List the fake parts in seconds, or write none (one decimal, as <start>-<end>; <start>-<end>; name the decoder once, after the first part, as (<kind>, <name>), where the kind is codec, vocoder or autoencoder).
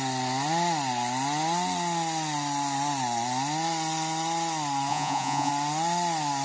4.9-5.5 (vocoder, Vocos)